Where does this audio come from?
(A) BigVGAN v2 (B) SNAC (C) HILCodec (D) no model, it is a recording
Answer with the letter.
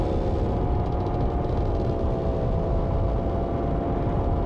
D